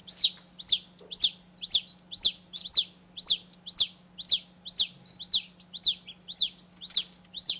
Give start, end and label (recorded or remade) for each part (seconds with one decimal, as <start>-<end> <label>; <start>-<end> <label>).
0.0-7.6 recorded